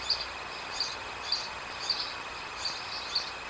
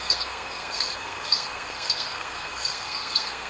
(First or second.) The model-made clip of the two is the second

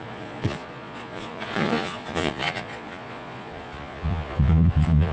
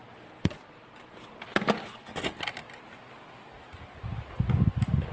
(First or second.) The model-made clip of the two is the first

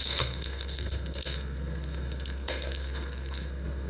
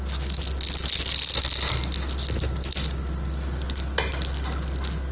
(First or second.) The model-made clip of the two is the first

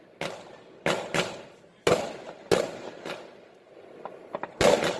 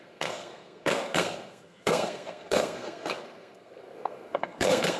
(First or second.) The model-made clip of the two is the second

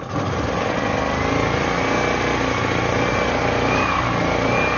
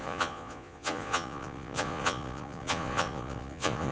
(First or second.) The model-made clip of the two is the second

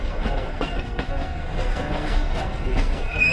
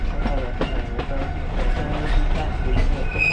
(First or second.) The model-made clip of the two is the first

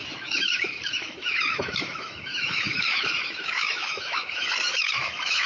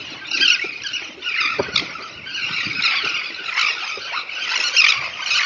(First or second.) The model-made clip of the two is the first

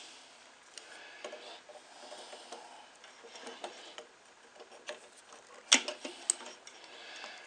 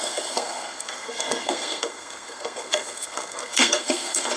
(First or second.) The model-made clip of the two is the second